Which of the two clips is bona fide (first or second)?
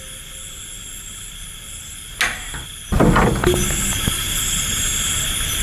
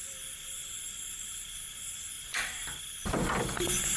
first